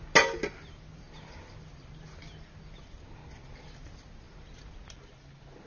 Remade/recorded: recorded